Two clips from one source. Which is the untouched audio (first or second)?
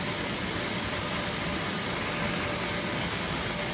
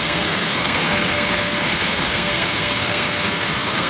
first